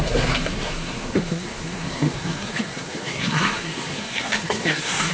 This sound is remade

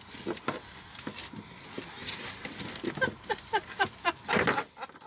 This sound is recorded